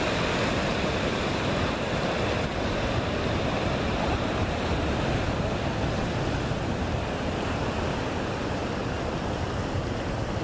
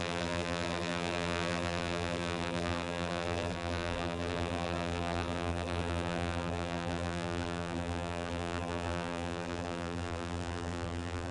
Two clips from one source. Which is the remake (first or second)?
second